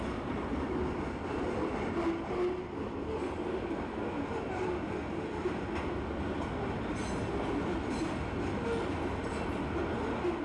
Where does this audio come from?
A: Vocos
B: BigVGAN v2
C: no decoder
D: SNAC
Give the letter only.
C